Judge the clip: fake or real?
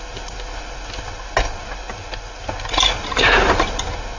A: real